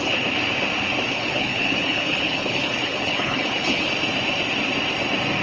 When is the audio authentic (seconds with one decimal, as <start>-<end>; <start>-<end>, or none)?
0.0-1.1; 3.9-5.4